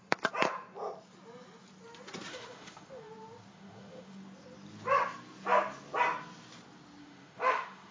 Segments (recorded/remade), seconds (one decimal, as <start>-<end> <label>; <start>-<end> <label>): 0.0-2.3 recorded; 2.3-3.1 remade; 3.1-3.5 recorded; 3.5-4.2 remade; 4.2-7.0 recorded; 7.0-7.9 remade